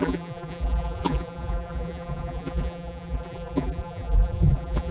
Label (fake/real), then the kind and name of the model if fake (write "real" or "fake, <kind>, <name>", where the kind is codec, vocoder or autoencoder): fake, vocoder, BigVGAN v2